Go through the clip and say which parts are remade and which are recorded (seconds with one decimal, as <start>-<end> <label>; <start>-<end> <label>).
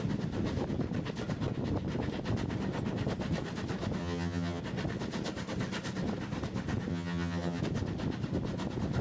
0.0-4.0 recorded; 4.0-4.6 remade; 4.6-6.9 recorded; 6.9-7.6 remade; 7.6-9.0 recorded